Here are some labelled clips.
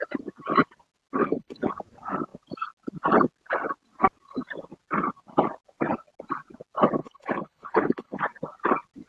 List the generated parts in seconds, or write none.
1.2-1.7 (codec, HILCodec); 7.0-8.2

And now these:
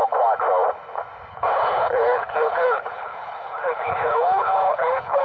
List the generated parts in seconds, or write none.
1.3-5.2 (codec, HILCodec)

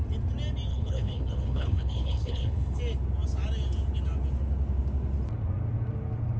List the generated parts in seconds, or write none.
0.7-2.8 (codec, HILCodec)

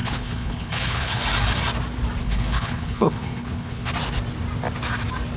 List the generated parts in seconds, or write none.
0.0-1.2 (codec, HILCodec); 2.2-3.9